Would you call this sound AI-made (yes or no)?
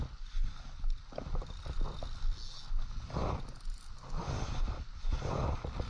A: no